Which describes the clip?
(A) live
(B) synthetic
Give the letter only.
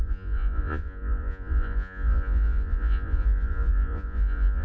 B